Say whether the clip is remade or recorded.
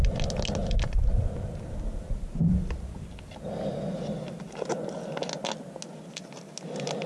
recorded